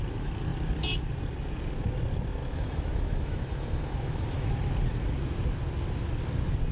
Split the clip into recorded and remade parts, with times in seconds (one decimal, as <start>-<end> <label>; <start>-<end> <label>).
0.0-2.4 recorded; 2.4-4.5 remade; 4.5-6.7 recorded